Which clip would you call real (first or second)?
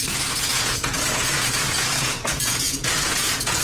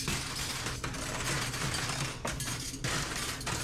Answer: second